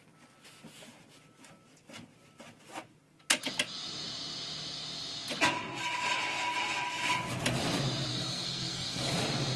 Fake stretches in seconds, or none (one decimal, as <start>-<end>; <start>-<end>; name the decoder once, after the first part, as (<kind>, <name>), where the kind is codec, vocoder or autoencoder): 8.1-9.1 (codec, SNAC)